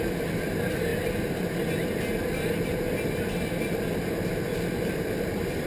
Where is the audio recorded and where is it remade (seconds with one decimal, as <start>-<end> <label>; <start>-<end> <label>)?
0.0-0.9 remade; 0.9-4.3 recorded; 4.3-5.7 remade